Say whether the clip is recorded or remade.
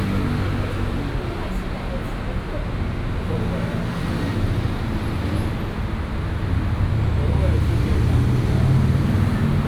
recorded